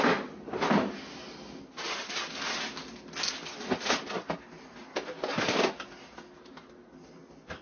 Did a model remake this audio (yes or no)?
no